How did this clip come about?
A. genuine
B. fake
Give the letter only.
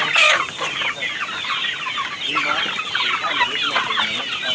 A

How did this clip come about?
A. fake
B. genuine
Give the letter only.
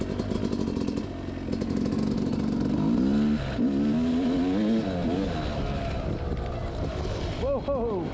B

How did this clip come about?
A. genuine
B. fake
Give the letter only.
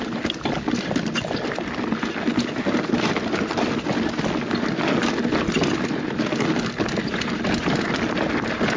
A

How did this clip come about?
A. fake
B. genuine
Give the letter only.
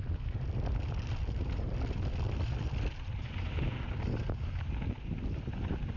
B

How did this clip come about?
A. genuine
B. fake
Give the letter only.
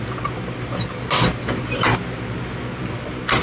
A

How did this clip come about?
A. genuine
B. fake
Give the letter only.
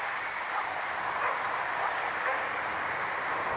A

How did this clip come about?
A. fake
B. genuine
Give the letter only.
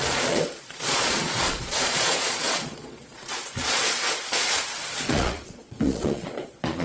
A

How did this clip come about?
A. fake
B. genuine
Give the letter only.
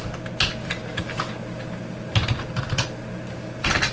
B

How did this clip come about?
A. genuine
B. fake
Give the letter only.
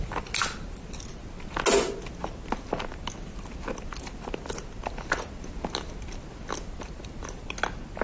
A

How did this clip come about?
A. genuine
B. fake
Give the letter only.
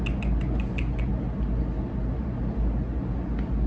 A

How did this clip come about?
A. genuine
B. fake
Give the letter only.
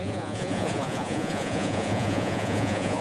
B